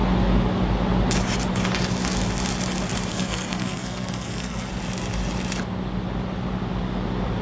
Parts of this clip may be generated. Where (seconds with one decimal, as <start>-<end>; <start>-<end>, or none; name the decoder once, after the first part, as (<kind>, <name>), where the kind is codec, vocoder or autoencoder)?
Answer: 3.1-4.7 (codec, SNAC)